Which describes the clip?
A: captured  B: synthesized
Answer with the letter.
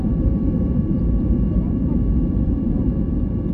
B